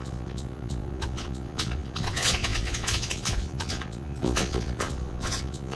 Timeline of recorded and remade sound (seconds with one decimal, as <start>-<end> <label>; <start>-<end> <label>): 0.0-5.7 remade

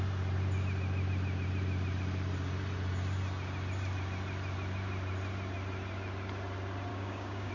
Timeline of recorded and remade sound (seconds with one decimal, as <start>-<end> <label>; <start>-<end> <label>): 0.0-6.9 recorded; 6.9-7.5 remade

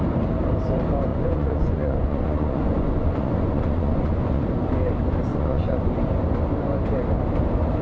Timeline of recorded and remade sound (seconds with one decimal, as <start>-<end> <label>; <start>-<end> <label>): 0.0-1.1 recorded; 1.1-4.4 remade; 4.4-5.3 recorded; 5.3-5.9 remade; 5.9-7.8 recorded